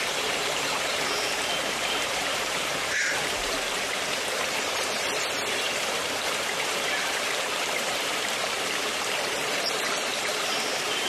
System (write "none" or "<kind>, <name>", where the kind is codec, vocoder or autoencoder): vocoder, BigVGAN v2